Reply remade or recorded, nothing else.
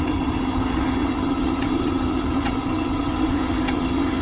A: remade